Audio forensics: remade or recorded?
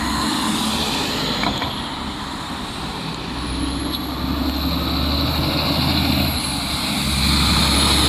recorded